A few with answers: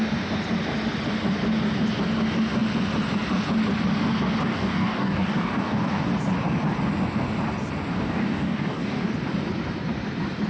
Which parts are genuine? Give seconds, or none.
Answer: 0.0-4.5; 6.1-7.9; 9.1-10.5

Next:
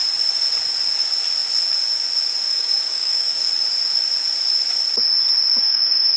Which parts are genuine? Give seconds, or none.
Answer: 0.0-2.5; 3.5-5.6

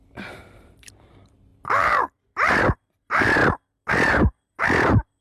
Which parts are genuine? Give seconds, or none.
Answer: 3.4-3.9

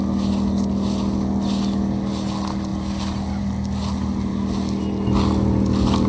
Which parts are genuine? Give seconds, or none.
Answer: 0.0-6.1

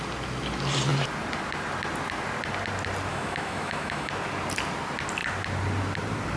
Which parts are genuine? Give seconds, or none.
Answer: 0.0-3.1; 4.1-6.4